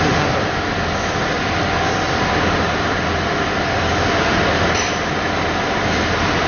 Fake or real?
real